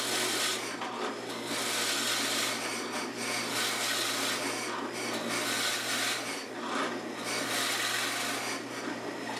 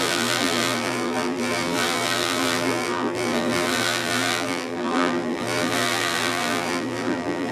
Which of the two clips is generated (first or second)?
second